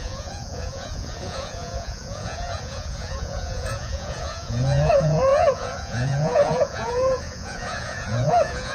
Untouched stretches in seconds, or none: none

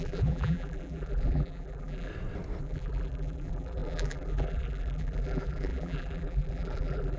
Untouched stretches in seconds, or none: 2.1-2.6

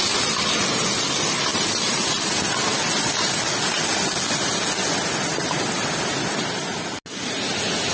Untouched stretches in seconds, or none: 0.0-7.9